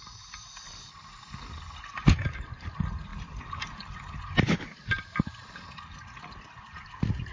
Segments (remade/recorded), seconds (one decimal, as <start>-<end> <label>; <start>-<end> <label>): 0.0-7.3 recorded